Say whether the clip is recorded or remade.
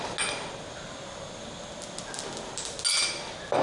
recorded